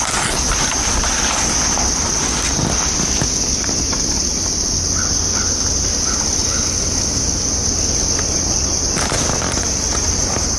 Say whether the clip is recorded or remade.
recorded